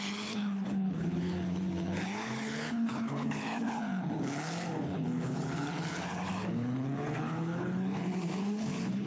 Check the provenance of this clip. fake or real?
fake